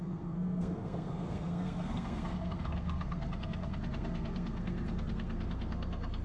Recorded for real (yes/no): no